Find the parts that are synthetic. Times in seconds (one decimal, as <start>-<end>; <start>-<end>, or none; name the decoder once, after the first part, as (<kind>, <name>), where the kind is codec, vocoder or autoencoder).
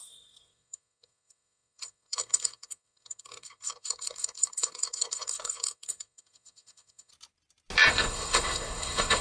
0.0-7.1 (codec, SNAC); 7.9-9.2